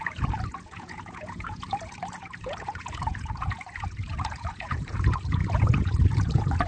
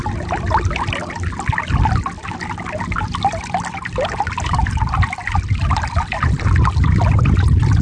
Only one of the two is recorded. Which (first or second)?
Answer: second